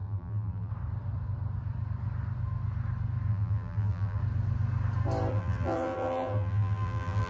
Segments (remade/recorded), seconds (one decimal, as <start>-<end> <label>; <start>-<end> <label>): 0.0-0.7 remade; 0.7-3.3 recorded; 3.3-4.2 remade; 4.2-5.3 recorded; 5.3-7.3 remade